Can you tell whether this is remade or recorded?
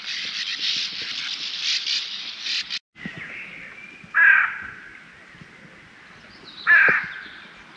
recorded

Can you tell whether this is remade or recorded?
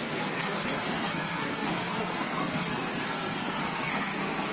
remade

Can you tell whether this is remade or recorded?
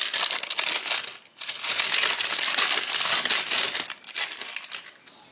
recorded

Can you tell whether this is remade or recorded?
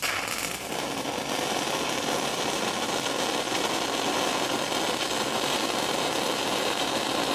recorded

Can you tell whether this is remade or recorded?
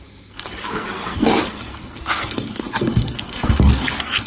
remade